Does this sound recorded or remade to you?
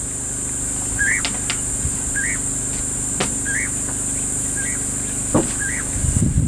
recorded